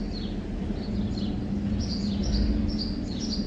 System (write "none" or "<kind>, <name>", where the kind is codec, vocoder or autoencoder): none